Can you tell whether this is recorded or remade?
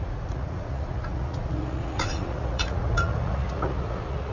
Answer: remade